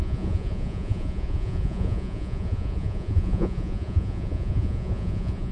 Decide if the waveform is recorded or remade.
remade